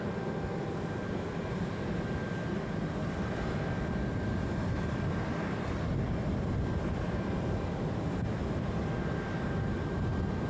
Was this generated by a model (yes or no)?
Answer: no